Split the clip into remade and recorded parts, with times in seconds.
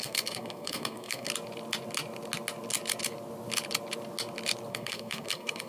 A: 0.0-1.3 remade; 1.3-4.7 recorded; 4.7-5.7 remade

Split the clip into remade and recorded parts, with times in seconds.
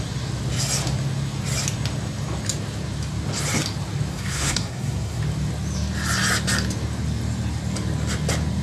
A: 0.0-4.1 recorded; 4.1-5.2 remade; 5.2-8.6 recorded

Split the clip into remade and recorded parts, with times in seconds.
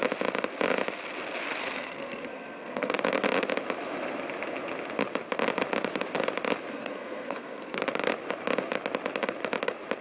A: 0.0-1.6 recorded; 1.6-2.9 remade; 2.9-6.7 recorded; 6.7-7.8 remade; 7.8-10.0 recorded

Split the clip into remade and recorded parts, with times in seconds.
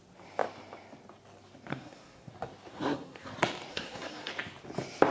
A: 0.0-1.7 recorded; 1.7-2.3 remade; 2.3-2.7 recorded; 2.7-3.3 remade; 3.3-3.7 recorded; 3.7-4.3 remade; 4.3-5.1 recorded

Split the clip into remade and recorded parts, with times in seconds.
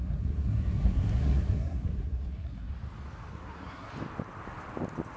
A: 0.0-2.7 remade; 2.7-3.3 recorded; 3.3-3.9 remade; 3.9-5.2 recorded